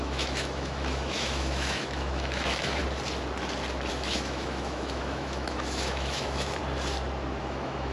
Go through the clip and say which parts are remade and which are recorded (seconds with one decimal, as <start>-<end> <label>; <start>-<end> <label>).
0.0-2.8 remade; 2.8-3.9 recorded; 3.9-6.6 remade; 6.6-7.4 recorded; 7.4-7.9 remade